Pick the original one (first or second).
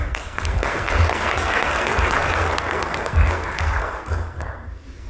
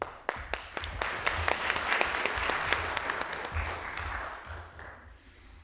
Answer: second